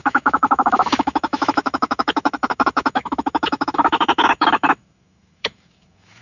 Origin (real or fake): fake